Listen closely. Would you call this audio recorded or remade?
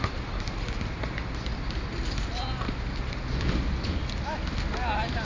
recorded